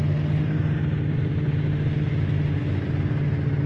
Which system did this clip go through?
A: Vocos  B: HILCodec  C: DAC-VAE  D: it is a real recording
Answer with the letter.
D